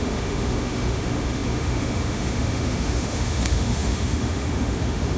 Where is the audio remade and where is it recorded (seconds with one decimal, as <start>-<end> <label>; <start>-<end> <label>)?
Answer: 0.0-5.2 remade